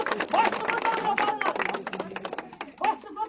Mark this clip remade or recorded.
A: recorded